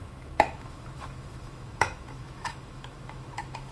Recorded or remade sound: remade